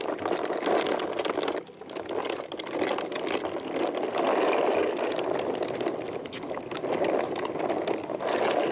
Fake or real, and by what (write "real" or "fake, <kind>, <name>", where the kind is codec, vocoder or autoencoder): real